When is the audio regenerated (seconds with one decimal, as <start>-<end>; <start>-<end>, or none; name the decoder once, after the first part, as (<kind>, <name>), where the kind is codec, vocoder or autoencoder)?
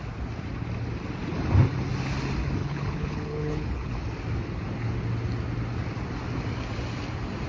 2.6-3.9 (codec, HILCodec)